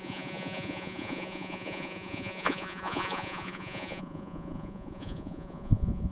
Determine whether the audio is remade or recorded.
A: remade